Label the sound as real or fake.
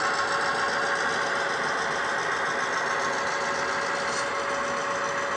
real